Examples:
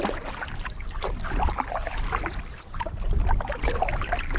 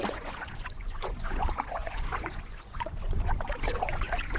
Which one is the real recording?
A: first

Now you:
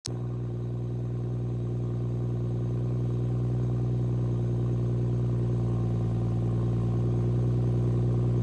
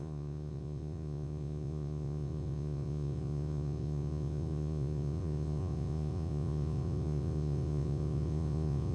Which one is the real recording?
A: first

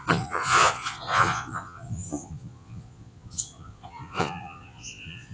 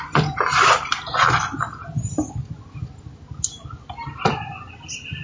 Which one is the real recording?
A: second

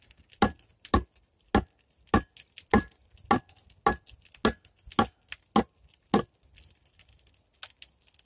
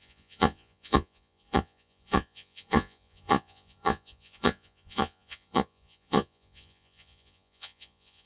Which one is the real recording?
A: first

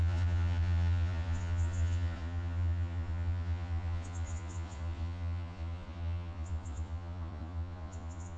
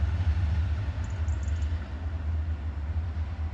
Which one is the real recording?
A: second